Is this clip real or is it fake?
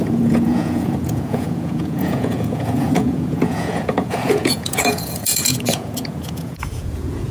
fake